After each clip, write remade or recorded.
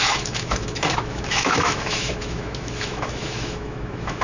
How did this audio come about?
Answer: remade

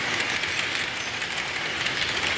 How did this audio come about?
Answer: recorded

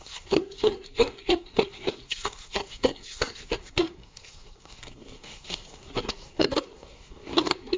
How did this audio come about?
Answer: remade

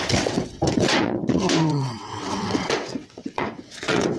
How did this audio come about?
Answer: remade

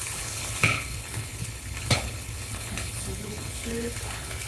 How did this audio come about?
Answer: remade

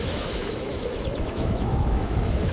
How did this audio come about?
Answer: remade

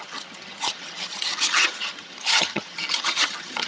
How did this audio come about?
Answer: remade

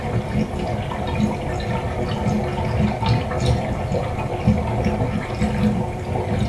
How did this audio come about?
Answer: recorded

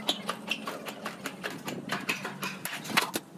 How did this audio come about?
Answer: recorded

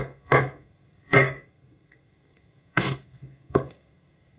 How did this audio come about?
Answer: remade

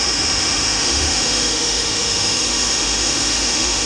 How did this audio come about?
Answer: remade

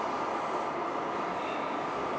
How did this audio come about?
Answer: recorded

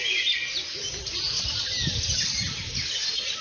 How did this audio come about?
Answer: recorded